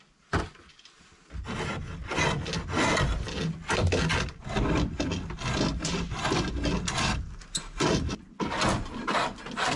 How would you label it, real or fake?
real